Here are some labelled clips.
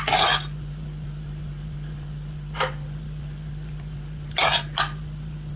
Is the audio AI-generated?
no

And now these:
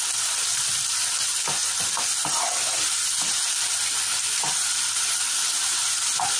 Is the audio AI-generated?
no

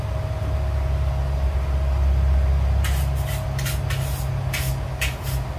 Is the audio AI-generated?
no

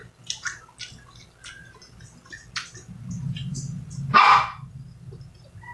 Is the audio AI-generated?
no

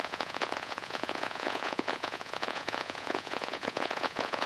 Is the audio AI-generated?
yes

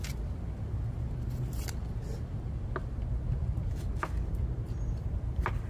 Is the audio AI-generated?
no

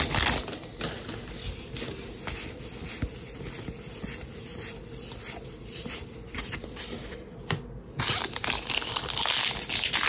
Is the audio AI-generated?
no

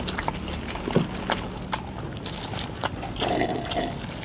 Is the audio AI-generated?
no